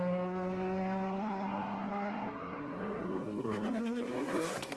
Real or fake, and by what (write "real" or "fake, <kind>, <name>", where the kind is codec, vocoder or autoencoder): fake, codec, SNAC